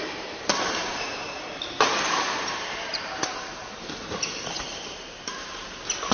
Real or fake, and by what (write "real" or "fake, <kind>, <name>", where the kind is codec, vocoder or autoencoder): fake, vocoder, BigVGAN v2